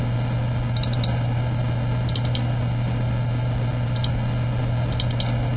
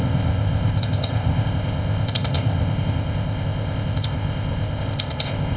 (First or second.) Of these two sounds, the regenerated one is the second